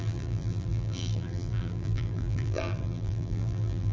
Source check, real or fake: fake